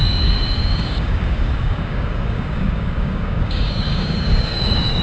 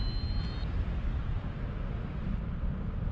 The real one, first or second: second